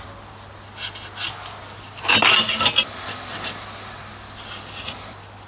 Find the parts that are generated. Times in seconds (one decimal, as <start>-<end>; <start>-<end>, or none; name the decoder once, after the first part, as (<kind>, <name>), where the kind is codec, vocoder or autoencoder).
none